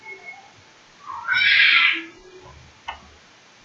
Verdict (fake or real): real